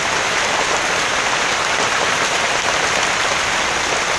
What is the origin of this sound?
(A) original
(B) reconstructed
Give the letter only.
A